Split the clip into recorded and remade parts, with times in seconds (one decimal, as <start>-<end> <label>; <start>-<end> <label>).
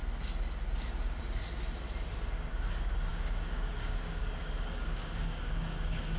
0.0-2.5 recorded; 2.5-6.2 remade